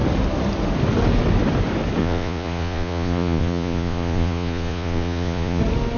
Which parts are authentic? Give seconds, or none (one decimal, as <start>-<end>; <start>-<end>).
0.0-2.0; 5.6-6.0